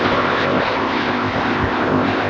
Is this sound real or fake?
fake